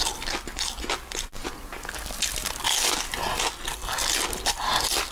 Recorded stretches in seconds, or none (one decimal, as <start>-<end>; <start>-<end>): 0.0-5.1